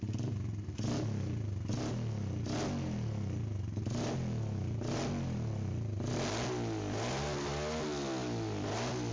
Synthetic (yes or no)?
no